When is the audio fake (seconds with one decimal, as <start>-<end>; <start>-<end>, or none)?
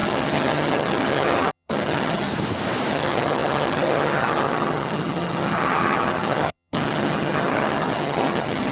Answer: 0.0-2.3; 2.9-8.7